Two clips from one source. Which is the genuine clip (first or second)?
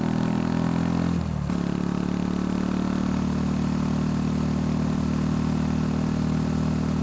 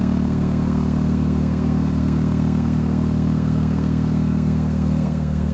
first